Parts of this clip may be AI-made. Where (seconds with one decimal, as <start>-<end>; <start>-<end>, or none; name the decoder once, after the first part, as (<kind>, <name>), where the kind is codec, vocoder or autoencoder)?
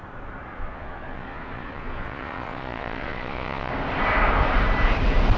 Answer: 0.5-3.7 (vocoder, Vocos)